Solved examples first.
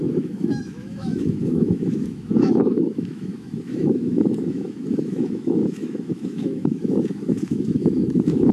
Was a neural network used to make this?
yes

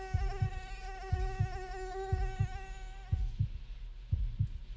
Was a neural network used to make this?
no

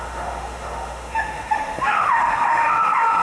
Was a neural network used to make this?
yes